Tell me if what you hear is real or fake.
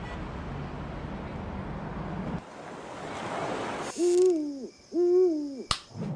real